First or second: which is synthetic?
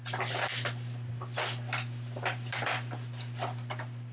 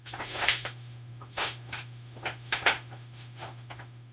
second